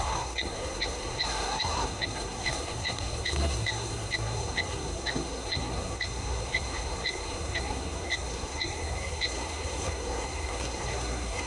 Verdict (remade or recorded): remade